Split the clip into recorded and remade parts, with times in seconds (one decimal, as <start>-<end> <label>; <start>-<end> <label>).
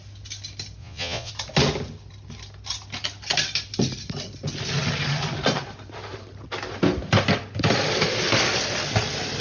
0.0-0.8 recorded; 0.8-1.3 remade; 1.3-9.4 recorded